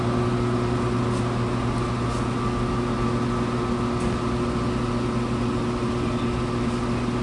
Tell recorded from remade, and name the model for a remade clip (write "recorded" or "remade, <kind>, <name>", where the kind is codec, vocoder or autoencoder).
recorded